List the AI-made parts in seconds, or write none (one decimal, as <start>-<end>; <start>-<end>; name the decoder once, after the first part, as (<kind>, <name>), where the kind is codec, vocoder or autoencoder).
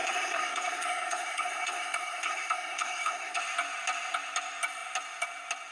0.0-3.4 (codec, SNAC)